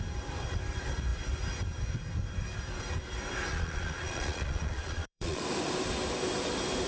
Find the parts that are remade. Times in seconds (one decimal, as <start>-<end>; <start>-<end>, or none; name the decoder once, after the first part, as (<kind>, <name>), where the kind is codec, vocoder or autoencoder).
3.5-5.4 (vocoder, Vocos)